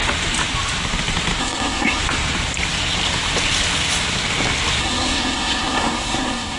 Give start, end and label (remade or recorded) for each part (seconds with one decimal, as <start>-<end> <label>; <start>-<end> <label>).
0.0-1.4 recorded; 1.4-2.0 remade; 2.0-4.8 recorded; 4.8-6.6 remade